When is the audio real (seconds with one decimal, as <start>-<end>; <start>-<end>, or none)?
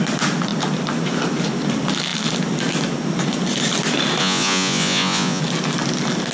0.0-4.2; 5.4-6.3